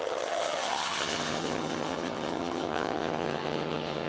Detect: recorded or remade remade